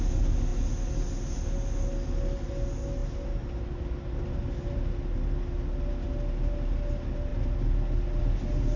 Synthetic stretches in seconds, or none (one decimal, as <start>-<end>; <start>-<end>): none